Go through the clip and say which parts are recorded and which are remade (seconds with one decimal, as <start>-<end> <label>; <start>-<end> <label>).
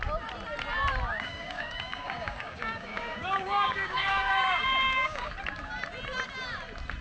0.0-1.1 recorded; 1.1-5.3 remade; 5.3-7.0 recorded